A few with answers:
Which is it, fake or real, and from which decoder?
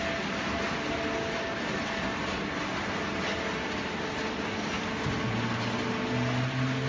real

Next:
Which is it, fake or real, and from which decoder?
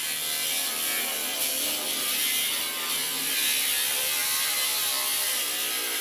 real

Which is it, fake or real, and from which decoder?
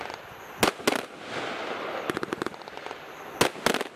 real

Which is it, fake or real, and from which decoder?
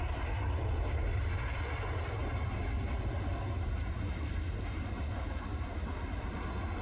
real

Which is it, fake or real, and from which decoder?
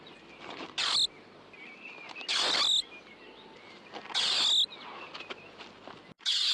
real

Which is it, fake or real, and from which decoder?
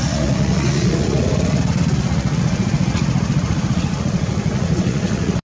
fake, vocoder, Vocos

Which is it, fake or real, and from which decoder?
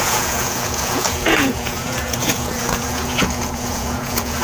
fake, vocoder, Vocos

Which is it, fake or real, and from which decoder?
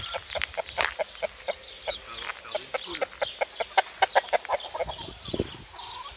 real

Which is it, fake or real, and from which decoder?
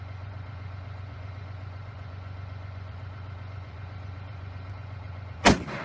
fake, vocoder, Vocos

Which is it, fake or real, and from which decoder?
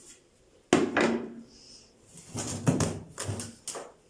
real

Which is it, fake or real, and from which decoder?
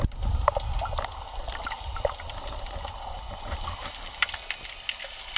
real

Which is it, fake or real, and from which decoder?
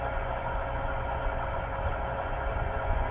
fake, vocoder, Vocos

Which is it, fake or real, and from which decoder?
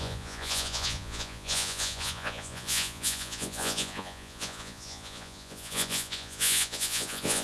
fake, vocoder, Vocos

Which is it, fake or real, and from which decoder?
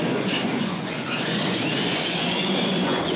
fake, vocoder, Vocos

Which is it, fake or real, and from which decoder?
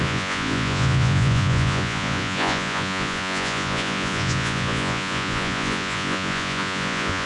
fake, vocoder, Vocos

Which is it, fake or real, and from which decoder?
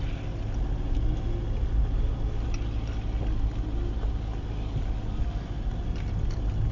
real